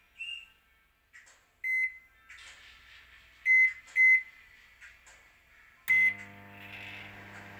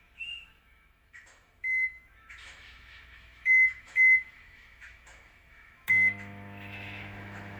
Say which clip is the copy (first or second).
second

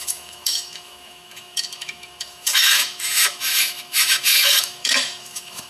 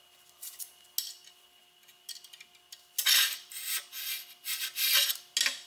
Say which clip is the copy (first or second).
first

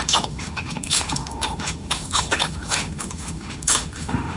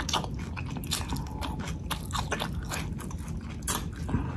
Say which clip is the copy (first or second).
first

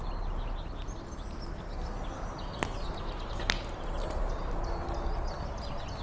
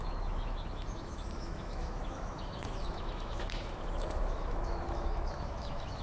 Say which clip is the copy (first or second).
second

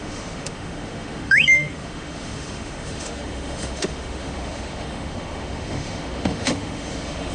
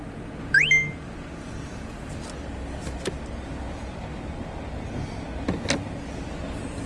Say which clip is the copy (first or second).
first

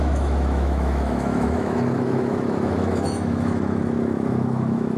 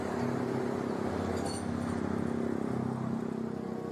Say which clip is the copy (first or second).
first